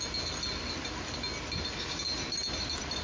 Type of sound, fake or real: real